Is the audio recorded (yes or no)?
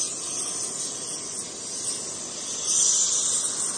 yes